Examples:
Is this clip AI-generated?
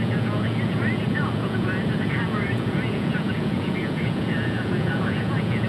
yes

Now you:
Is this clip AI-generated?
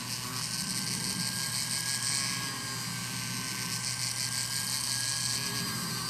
no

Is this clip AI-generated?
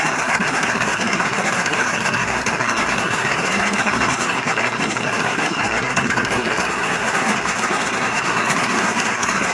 yes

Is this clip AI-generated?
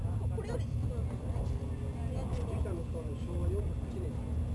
no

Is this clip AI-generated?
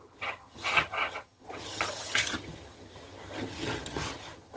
yes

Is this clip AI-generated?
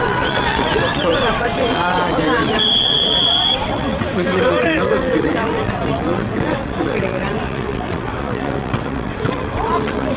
yes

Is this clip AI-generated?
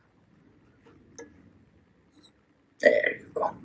no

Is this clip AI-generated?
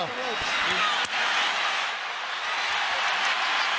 no